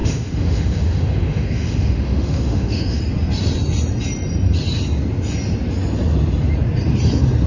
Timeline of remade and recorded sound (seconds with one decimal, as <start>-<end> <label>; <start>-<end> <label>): 0.0-3.0 remade; 3.0-7.5 recorded